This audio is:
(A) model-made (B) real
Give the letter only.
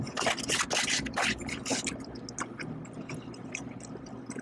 B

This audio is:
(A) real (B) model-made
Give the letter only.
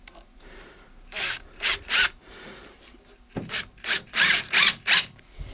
B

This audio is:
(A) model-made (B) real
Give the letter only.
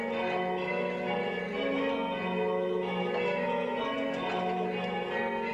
B